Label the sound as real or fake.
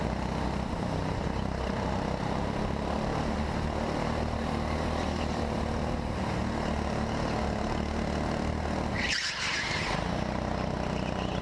real